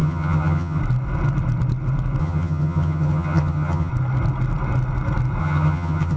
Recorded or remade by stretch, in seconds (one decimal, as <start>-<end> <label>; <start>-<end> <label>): 0.0-0.8 remade; 0.8-2.2 recorded; 2.2-3.9 remade; 3.9-5.4 recorded; 5.4-6.2 remade